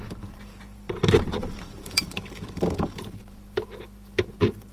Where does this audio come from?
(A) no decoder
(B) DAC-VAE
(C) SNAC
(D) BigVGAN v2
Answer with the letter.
D